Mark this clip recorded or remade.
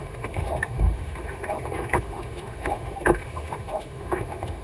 remade